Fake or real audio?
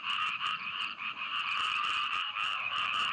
fake